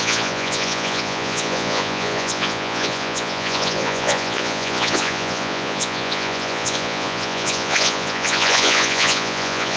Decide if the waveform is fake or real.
fake